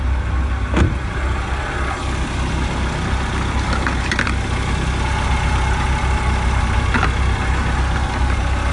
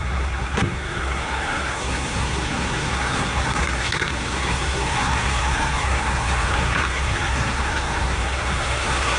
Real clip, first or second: first